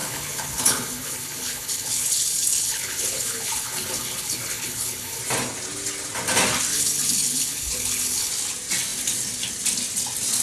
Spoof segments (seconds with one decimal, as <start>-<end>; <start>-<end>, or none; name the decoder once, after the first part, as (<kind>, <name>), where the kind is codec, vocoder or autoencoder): 0.0-5.2 (codec, HILCodec); 6.7-8.3